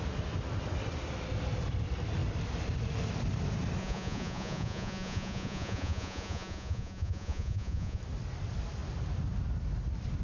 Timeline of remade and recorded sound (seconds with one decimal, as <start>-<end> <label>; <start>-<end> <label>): 0.0-3.8 recorded; 3.8-8.0 remade; 8.0-10.2 recorded